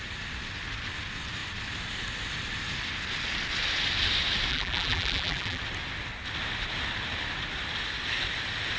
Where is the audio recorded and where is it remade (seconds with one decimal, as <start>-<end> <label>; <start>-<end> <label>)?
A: 0.0-4.5 recorded; 4.5-5.6 remade; 5.6-8.8 recorded